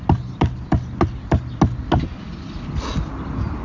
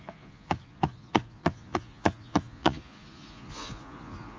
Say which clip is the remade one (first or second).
second